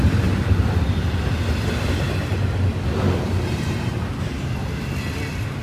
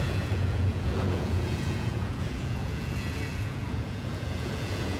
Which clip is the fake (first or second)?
second